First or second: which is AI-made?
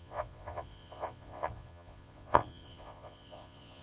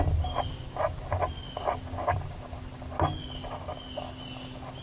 first